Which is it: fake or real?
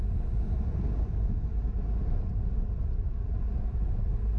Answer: real